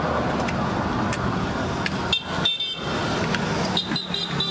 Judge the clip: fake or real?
real